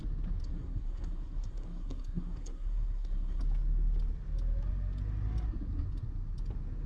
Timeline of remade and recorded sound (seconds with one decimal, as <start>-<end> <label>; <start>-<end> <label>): 0.0-0.4 recorded; 0.4-3.4 remade; 3.4-6.9 recorded